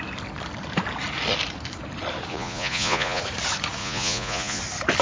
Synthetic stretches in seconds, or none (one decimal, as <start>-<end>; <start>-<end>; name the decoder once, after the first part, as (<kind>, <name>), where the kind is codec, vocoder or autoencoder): 2.3-3.2 (vocoder, Vocos); 3.8-4.6